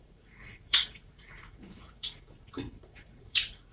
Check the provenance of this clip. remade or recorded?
remade